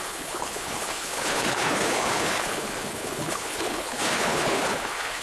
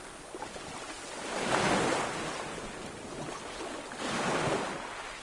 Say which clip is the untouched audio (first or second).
second